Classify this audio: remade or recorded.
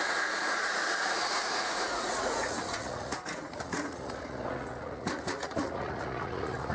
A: remade